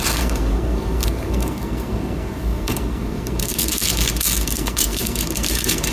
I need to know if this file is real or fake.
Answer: fake